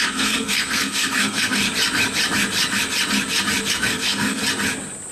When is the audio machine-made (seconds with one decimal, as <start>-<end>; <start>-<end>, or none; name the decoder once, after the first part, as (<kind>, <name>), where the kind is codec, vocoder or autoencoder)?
0.0-1.6 (codec, SNAC); 3.7-4.4